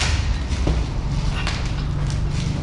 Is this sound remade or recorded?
recorded